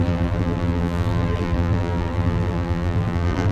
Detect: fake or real fake